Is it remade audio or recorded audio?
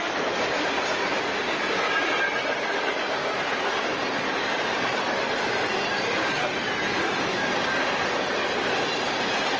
recorded